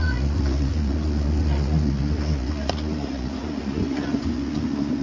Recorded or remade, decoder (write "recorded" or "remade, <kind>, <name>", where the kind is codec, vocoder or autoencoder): remade, vocoder, Vocos